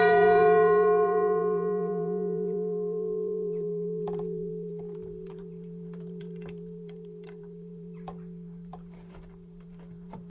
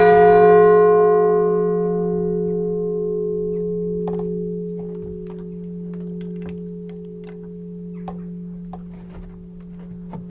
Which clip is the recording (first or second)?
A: second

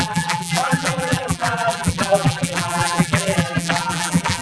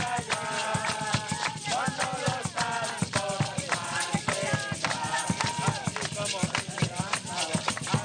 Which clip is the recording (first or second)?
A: second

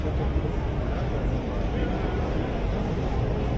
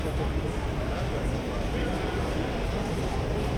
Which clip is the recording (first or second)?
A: first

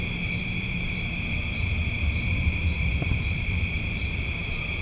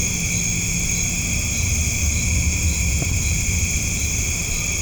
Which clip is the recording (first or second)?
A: second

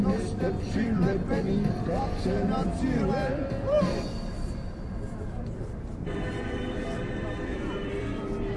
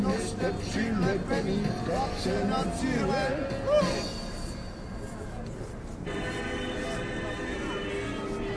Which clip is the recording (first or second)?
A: second